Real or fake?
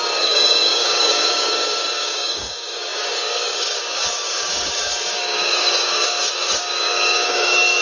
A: fake